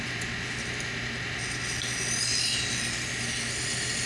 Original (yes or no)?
yes